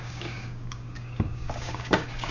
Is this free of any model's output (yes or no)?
no